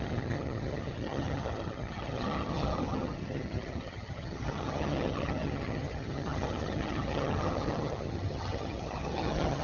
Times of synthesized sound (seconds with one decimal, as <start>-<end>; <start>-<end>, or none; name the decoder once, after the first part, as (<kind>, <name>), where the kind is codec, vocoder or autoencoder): 0.0-9.6 (vocoder, HiFi-GAN)